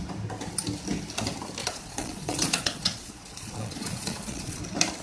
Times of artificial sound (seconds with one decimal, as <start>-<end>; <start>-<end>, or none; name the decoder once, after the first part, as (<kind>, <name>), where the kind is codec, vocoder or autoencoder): 1.6-4.6 (vocoder, Vocos)